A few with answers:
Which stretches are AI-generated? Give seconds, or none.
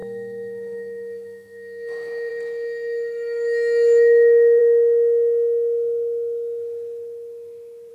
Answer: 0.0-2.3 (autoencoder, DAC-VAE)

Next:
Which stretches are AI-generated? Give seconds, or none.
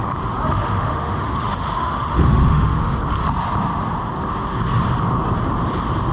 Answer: 0.6-3.0 (autoencoder, DAC-VAE)